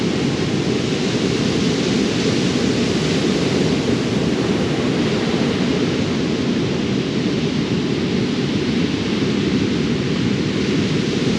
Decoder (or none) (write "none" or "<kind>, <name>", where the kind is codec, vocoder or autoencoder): none